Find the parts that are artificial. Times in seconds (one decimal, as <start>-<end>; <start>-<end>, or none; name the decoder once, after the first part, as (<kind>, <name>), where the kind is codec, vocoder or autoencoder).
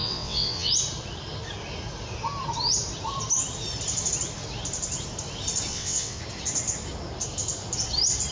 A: 0.0-0.7 (vocoder, WaveNeXt); 5.7-6.2